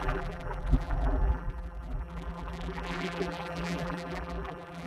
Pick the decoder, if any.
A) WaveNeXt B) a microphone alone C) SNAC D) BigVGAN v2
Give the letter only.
D